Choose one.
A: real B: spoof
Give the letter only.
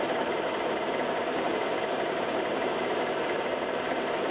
B